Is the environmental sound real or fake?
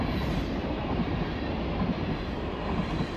real